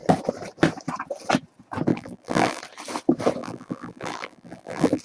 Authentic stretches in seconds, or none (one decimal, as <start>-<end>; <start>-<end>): 0.0-1.9; 2.6-3.4